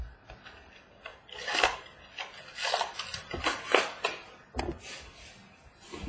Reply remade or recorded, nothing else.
recorded